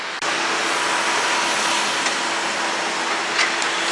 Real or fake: real